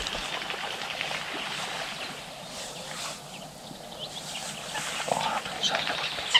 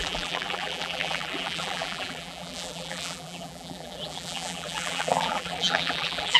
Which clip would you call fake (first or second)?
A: second